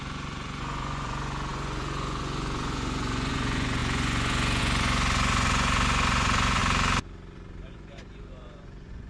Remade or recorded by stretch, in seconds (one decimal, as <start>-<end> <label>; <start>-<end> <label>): 0.0-6.6 remade; 6.6-7.7 recorded; 7.7-9.1 remade